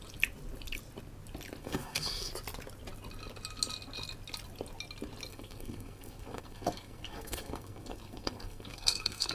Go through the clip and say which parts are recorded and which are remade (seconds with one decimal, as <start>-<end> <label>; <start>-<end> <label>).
0.0-1.6 recorded; 1.6-2.3 remade; 2.3-5.3 recorded; 5.3-9.3 remade

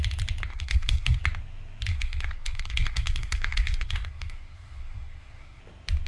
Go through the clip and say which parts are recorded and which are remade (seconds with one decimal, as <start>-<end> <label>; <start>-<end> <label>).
0.0-0.5 recorded; 0.5-1.2 remade; 1.2-1.9 recorded; 1.9-5.6 remade; 5.6-6.1 recorded

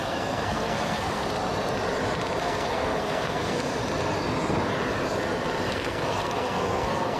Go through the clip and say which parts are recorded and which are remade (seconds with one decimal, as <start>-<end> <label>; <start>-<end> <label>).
0.0-1.2 remade; 1.2-2.4 recorded; 2.4-3.8 remade; 3.8-5.7 recorded; 5.7-7.2 remade